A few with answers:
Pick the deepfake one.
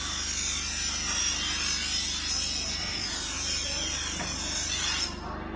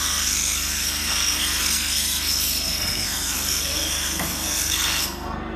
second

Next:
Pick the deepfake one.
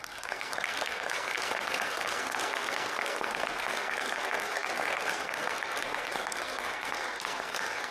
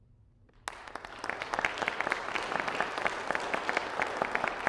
first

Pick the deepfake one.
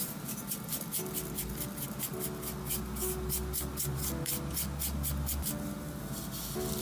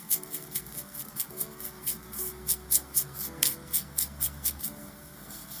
second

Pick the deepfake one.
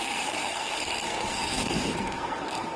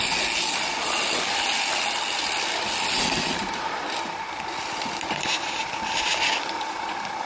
first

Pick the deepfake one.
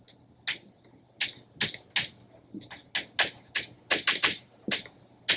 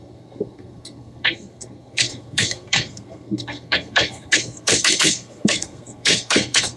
second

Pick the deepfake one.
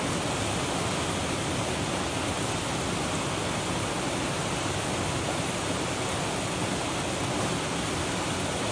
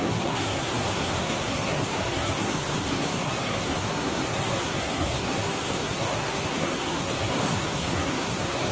second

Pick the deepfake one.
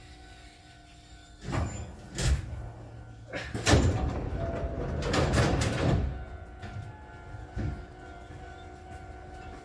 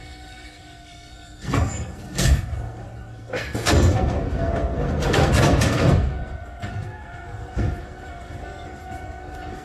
second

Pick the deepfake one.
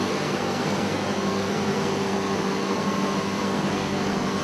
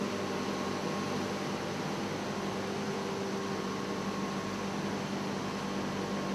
first